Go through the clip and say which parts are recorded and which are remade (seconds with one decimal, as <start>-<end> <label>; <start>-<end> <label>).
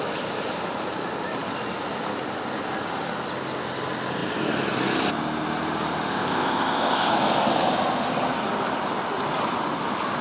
0.0-6.1 recorded; 6.1-7.1 remade; 7.1-10.2 recorded